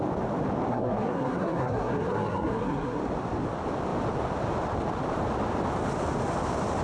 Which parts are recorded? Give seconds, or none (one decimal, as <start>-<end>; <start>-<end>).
0.0-0.7; 3.0-6.8